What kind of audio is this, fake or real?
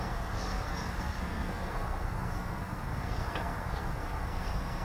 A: fake